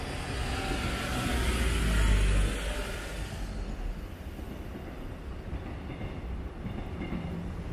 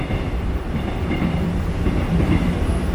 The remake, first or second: second